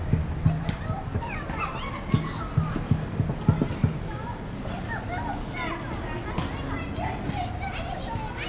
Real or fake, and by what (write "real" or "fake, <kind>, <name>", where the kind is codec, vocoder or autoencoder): real